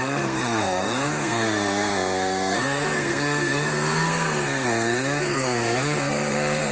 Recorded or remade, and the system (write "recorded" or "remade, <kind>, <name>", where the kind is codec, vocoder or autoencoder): remade, codec, SNAC